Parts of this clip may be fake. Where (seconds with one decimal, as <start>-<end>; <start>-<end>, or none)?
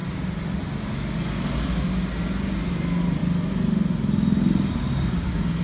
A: none